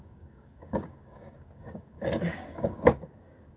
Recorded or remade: remade